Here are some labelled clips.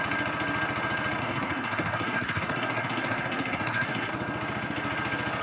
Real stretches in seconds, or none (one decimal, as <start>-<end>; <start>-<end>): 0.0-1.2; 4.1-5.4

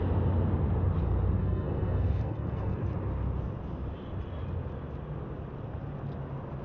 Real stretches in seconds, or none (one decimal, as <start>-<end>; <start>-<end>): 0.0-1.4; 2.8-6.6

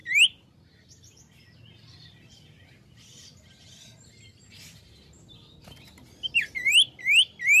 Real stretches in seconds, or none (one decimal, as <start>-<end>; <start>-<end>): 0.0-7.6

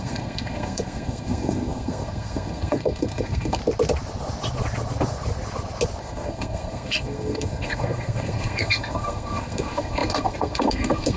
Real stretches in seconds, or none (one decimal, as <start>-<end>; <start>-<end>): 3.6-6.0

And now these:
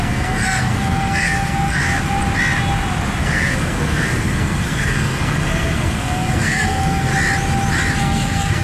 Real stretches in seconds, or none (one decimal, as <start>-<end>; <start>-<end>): 1.8-3.2; 7.1-8.0

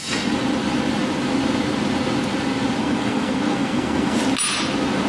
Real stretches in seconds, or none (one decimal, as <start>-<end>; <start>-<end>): 0.0-2.8; 4.2-5.1

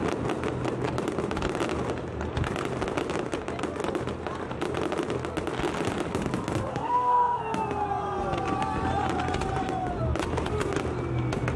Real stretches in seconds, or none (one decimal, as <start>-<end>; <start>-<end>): 0.0-6.7; 7.4-11.6

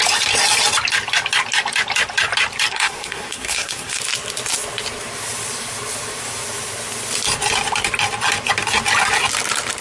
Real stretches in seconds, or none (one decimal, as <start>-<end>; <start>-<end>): 0.0-2.7; 4.0-9.8